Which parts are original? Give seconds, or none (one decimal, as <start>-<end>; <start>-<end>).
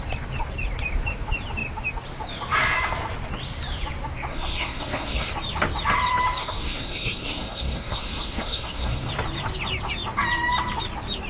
0.0-4.3; 5.3-6.4; 9.1-11.3